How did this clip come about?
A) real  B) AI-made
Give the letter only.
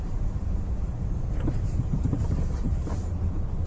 B